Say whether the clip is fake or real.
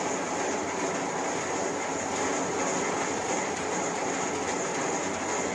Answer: real